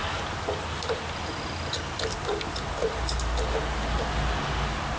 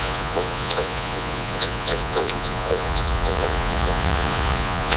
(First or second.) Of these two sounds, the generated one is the second